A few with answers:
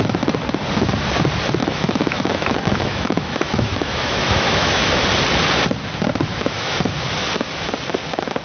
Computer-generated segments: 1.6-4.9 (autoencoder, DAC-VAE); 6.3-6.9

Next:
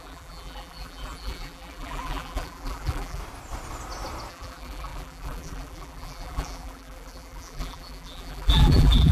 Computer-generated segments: 0.0-3.2 (vocoder, BigVGAN v2); 4.3-9.1